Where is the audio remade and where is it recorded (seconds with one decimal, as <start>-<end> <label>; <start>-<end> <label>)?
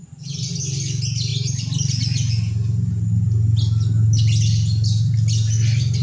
0.0-6.0 recorded